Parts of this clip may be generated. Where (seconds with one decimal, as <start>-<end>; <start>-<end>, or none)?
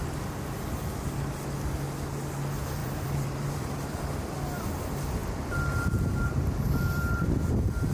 2.8-3.7; 5.2-7.5